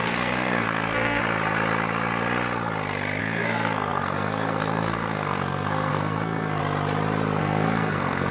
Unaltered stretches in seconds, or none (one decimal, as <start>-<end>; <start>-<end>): 1.2-3.2; 6.6-7.4